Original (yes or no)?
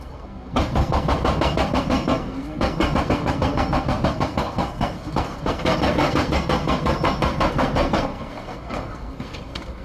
no